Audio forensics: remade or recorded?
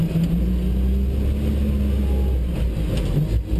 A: recorded